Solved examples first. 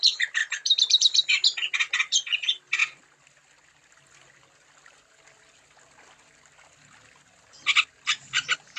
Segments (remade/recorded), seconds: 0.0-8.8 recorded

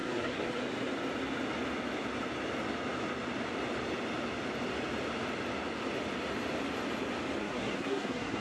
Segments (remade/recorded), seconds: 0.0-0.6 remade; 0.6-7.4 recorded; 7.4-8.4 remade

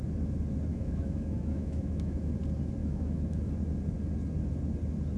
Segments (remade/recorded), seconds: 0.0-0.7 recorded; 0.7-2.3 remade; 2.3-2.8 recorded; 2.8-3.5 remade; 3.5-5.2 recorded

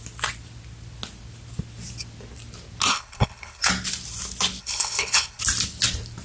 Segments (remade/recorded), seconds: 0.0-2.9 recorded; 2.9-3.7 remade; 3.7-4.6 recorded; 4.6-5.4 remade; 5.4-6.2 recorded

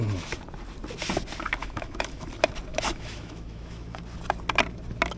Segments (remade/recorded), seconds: 0.0-1.6 recorded; 1.6-2.3 remade; 2.3-2.7 recorded; 2.7-4.0 remade; 4.0-5.2 recorded

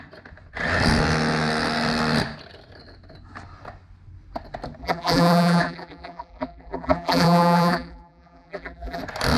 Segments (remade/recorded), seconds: 0.0-4.8 recorded; 4.8-9.0 remade; 9.0-9.4 recorded

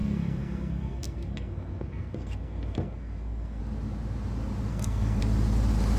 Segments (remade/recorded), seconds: 0.0-3.6 remade; 3.6-4.7 recorded; 4.7-5.2 remade; 5.2-6.0 recorded

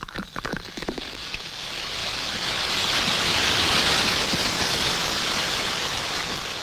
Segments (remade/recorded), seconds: 0.0-6.6 remade